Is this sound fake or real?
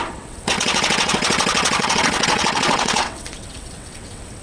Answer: fake